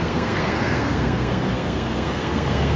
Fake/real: fake